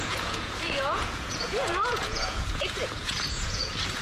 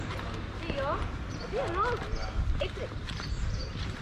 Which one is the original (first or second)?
second